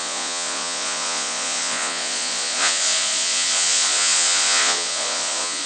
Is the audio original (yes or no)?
no